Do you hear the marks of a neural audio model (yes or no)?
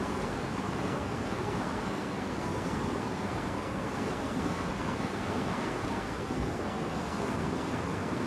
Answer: yes